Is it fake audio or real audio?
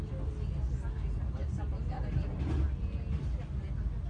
real